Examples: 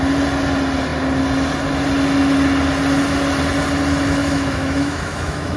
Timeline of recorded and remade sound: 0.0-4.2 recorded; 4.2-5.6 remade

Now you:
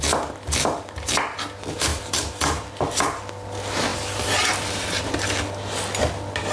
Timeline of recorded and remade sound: 0.0-3.9 recorded; 3.9-5.7 remade; 5.7-6.5 recorded

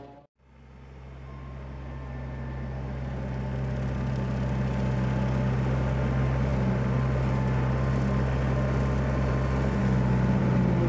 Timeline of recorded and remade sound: 0.0-10.9 recorded

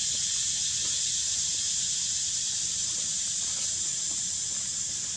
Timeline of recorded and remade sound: 0.0-1.4 recorded; 1.4-3.2 remade; 3.2-3.9 recorded; 3.9-4.4 remade; 4.4-5.2 recorded

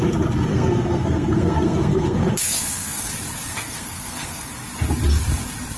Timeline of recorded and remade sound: 0.0-0.5 recorded; 0.5-3.1 remade; 3.1-3.5 recorded; 3.5-4.5 remade; 4.5-5.8 recorded

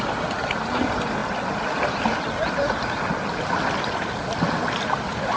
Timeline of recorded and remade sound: 0.0-5.4 recorded

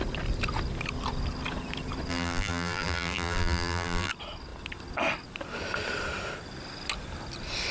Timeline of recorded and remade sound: 0.0-2.1 recorded; 2.1-4.1 remade; 4.1-7.7 recorded

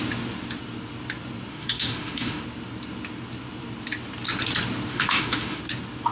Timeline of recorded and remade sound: 0.0-1.5 recorded; 1.5-2.4 remade; 2.4-4.9 recorded; 4.9-5.6 remade; 5.6-6.1 recorded